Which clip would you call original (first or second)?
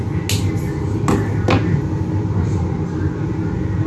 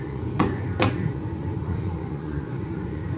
first